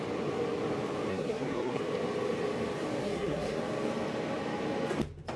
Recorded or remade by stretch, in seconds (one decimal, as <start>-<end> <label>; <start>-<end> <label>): 0.0-1.1 recorded; 1.1-1.8 remade; 1.8-3.0 recorded; 3.0-3.6 remade; 3.6-5.4 recorded